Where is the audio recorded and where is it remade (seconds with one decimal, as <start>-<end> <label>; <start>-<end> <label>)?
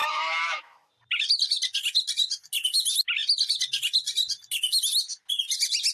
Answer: 0.0-0.9 remade; 0.9-5.9 recorded